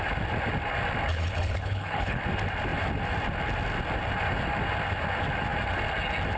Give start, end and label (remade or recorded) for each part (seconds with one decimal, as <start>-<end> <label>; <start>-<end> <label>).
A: 0.0-1.1 recorded; 1.1-2.2 remade; 2.2-6.4 recorded